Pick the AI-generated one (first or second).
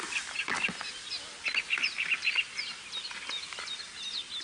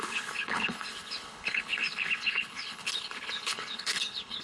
second